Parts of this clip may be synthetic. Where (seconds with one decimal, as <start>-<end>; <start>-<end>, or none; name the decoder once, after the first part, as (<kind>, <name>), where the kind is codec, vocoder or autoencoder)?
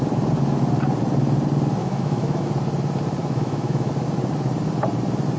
1.8-2.5 (autoencoder, DAC-VAE); 3.2-3.9